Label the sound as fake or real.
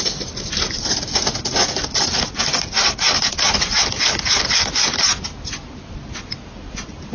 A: real